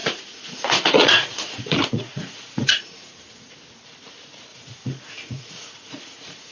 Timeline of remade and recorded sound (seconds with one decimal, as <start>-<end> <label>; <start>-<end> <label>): 0.0-3.5 remade; 3.5-4.5 recorded; 4.5-6.5 remade

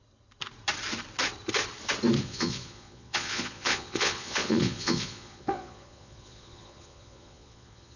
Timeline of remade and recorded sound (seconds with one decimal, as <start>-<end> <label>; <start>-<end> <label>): 0.0-2.2 recorded; 2.2-8.0 remade

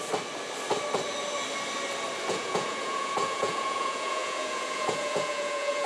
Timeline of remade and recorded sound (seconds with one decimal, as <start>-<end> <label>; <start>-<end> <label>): 0.0-2.3 recorded; 2.3-5.9 remade

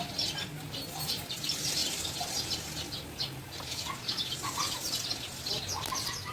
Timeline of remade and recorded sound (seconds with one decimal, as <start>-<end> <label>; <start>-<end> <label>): 0.0-6.3 recorded